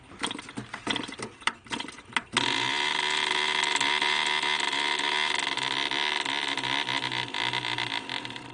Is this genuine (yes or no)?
yes